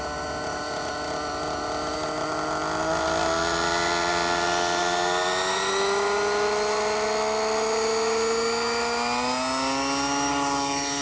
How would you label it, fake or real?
real